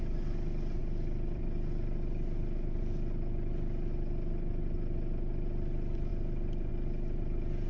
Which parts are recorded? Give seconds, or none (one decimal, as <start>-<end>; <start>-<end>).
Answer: 0.0-0.8; 2.8-6.1; 6.7-7.7